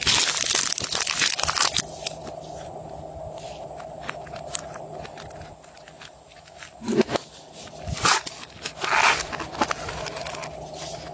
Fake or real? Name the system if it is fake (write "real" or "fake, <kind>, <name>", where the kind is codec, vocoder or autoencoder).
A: real